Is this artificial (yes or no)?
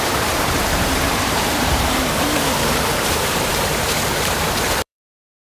yes